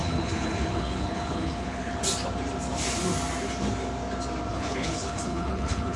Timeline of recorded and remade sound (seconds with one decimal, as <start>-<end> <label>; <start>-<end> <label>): 0.0-2.0 remade; 2.0-4.5 recorded; 4.5-6.0 remade